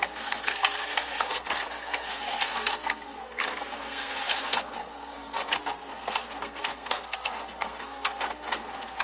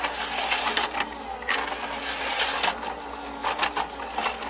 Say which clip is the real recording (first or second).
second